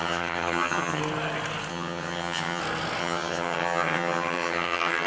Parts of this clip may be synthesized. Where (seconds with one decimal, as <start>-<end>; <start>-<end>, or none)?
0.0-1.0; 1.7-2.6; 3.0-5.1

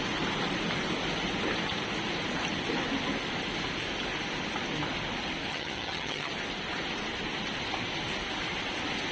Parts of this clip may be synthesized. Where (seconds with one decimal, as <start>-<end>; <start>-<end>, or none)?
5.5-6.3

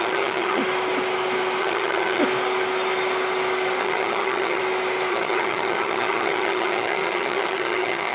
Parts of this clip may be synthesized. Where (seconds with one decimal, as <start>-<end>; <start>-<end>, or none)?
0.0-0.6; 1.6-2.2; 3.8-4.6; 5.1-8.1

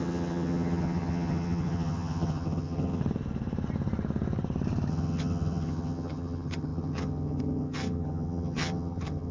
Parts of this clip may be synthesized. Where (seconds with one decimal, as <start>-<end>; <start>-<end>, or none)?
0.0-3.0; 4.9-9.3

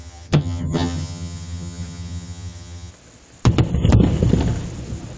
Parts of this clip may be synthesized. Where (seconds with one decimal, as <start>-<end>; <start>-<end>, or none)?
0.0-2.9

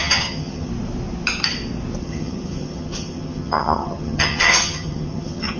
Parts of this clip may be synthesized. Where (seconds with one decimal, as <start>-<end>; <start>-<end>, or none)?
0.0-0.7; 2.0-5.6